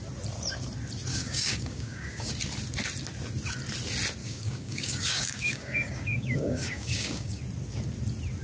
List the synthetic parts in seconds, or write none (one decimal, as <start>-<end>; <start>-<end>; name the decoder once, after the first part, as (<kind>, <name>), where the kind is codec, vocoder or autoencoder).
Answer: 1.1-2.3 (codec, DAC); 4.2-7.4